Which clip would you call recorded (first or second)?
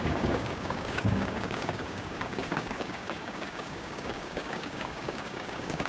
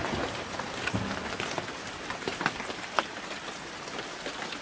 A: second